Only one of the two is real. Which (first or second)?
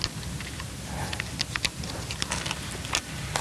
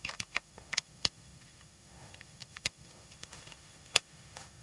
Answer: first